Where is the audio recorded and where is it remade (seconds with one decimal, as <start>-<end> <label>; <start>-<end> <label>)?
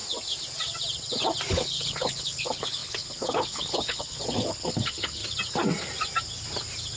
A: 0.0-1.5 recorded; 1.5-5.2 remade; 5.2-7.0 recorded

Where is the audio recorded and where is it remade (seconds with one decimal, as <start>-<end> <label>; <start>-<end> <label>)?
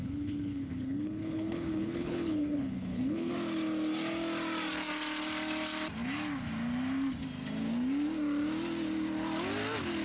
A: 0.0-3.3 remade; 3.3-10.0 recorded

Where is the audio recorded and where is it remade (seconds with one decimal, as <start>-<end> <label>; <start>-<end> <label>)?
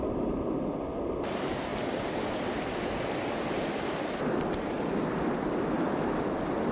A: 0.0-6.7 recorded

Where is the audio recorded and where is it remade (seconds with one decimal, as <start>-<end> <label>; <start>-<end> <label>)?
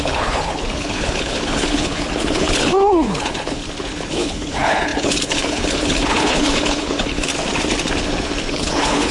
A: 0.0-3.6 remade; 3.6-4.1 recorded; 4.1-7.3 remade; 7.3-8.5 recorded; 8.5-9.1 remade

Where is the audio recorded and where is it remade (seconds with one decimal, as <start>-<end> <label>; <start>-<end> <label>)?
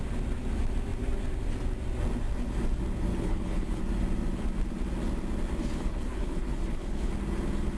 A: 0.0-3.1 recorded; 3.1-3.8 remade; 3.8-5.6 recorded; 5.6-7.1 remade; 7.1-7.8 recorded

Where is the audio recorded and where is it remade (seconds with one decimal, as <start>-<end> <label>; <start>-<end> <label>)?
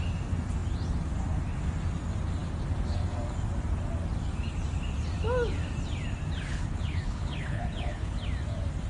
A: 0.0-6.5 recorded; 6.5-8.2 remade; 8.2-8.9 recorded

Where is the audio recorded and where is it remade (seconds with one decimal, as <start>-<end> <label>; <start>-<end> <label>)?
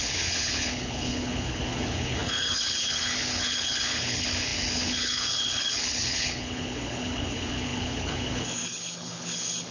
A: 0.0-9.7 remade